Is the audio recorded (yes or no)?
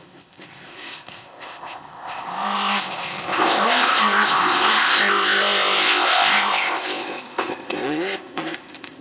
no